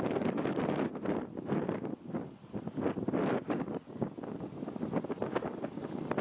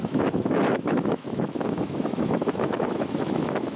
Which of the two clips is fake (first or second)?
second